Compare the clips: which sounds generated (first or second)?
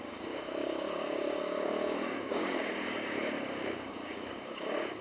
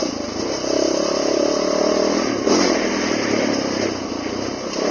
first